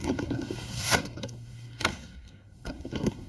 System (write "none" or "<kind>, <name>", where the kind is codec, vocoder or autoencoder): codec, SNAC